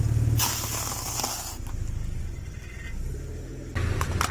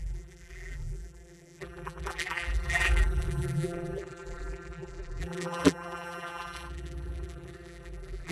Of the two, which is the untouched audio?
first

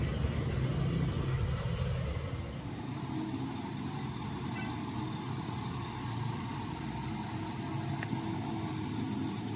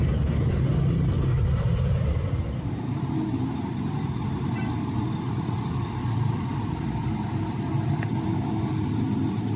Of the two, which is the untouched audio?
first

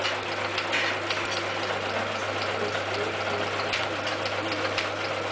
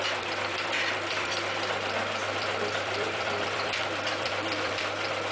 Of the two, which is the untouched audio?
first